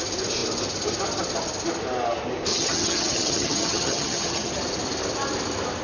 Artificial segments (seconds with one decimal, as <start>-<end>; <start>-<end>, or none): 2.5-4.5